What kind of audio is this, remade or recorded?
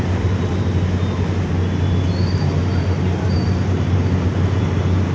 recorded